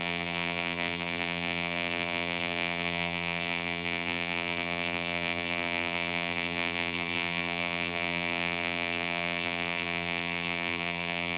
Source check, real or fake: fake